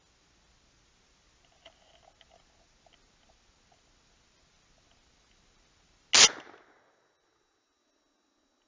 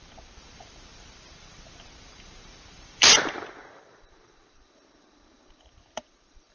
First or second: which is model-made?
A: second